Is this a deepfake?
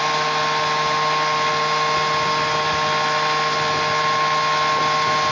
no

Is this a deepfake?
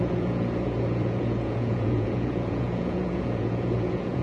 yes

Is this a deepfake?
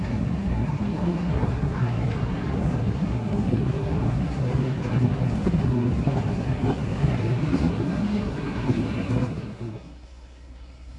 yes